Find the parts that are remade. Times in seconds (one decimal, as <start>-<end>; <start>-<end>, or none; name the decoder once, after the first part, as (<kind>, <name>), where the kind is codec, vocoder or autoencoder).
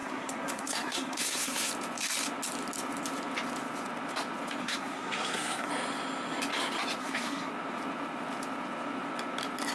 0.0-1.7 (codec, SNAC); 4.6-5.7; 7.0-7.5